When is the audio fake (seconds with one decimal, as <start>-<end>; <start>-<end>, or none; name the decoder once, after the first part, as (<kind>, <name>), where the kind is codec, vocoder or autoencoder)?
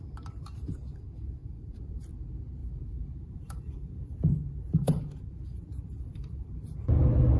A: 1.4-2.1 (vocoder, BigVGAN v2); 2.6-7.0